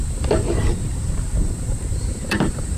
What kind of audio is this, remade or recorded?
remade